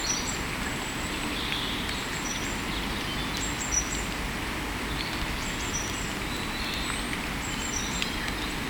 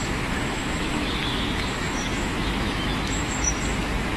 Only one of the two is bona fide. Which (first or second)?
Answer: first